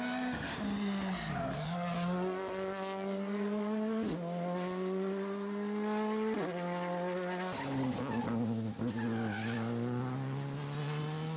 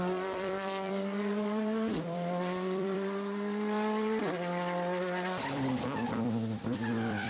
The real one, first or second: first